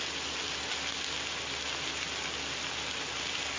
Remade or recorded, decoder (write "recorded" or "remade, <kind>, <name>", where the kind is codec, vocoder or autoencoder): recorded